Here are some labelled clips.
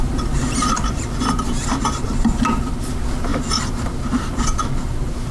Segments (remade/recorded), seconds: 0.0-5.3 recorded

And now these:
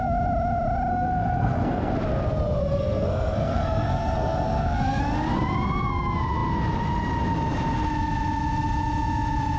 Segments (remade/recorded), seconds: 0.0-0.9 recorded; 0.9-1.9 remade; 1.9-2.7 recorded; 2.7-5.0 remade; 5.0-9.6 recorded

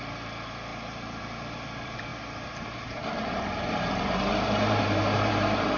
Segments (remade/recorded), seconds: 0.0-5.8 remade